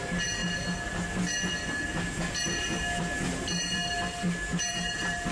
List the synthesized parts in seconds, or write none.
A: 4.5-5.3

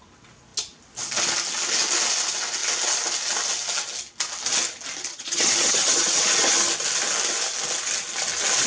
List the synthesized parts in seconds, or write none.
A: 5.1-6.7

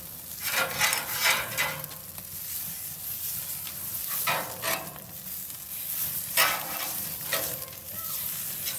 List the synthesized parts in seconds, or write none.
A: none

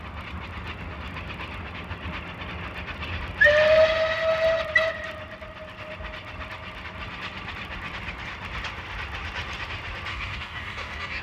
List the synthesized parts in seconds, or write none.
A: 10.1-11.2

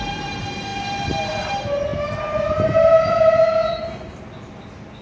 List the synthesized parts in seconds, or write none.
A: none

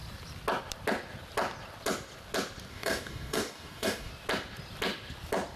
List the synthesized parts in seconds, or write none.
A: 2.7-4.1

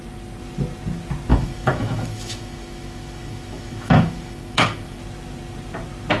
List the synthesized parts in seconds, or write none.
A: 1.3-5.0

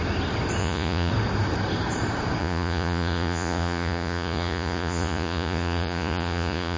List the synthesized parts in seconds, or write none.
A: 0.6-1.1; 2.4-6.8